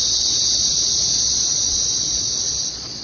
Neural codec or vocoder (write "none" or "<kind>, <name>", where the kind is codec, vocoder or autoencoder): vocoder, Vocos